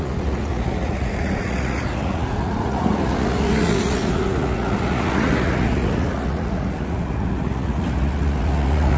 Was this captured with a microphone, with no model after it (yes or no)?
no